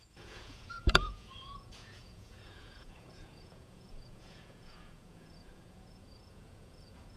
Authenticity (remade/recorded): remade